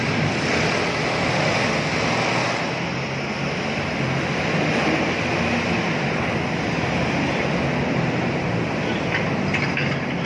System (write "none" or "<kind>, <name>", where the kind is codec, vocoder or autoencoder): none